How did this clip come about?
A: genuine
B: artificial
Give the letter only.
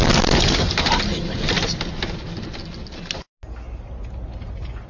A